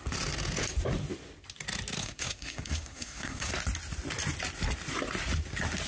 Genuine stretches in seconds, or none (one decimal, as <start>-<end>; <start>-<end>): 0.0-2.0; 3.5-5.9